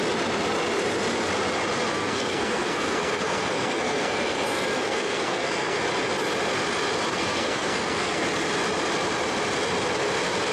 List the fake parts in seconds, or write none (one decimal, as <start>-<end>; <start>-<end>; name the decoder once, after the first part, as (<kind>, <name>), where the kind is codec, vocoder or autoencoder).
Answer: 1.9-5.8 (codec, SNAC); 7.1-8.2

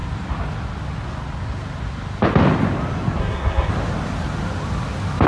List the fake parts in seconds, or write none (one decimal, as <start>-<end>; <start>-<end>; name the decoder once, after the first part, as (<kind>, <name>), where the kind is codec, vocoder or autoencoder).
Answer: 3.2-3.7 (codec, SNAC)

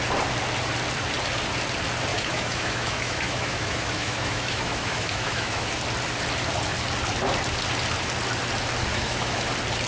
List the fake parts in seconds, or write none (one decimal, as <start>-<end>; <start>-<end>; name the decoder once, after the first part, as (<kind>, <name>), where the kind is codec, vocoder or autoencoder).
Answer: 2.1-5.7 (autoencoder, DAC-VAE); 8.9-9.5

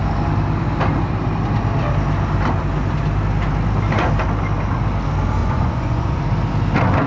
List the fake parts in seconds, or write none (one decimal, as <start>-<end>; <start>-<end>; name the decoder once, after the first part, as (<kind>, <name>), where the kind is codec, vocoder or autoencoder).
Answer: 5.4-6.2 (vocoder, Vocos)

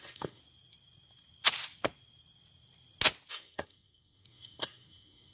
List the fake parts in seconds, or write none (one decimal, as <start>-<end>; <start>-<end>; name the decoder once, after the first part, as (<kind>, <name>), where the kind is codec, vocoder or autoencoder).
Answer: 0.0-0.4 (codec, SNAC); 3.3-5.3

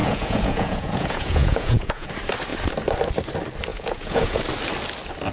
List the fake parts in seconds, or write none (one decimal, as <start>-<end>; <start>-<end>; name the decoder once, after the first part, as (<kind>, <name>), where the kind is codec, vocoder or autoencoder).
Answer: 0.0-2.1 (vocoder, Vocos); 3.7-4.4

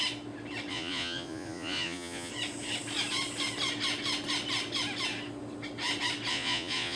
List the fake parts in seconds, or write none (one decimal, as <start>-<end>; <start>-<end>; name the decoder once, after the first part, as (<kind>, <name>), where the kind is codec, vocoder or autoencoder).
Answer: 0.7-2.3 (vocoder, Vocos); 6.3-7.0